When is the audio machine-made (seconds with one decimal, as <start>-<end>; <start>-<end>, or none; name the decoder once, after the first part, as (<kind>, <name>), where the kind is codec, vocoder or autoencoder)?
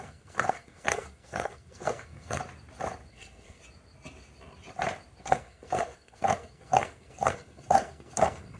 0.0-2.4 (codec, SNAC); 3.1-3.6; 5.2-8.6